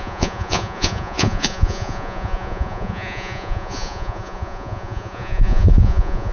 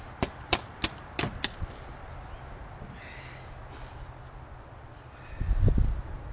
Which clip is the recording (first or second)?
second